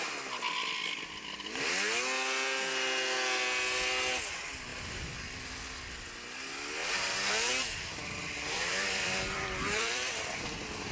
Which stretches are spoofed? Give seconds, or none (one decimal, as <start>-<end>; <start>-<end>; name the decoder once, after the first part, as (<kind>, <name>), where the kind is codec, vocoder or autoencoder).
1.2-1.7 (vocoder, BigVGAN v2); 4.7-5.4; 6.8-7.5; 8.7-10.9